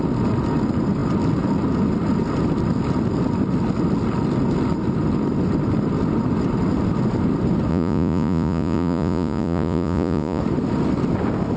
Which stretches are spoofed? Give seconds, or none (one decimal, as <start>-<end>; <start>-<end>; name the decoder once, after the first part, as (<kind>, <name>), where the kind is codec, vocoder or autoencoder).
7.7-10.4 (vocoder, Vocos)